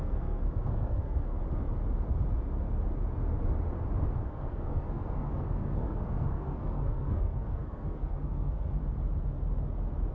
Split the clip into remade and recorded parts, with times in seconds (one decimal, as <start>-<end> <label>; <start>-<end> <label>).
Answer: 0.0-1.4 remade; 1.4-4.2 recorded; 4.2-8.8 remade; 8.8-10.1 recorded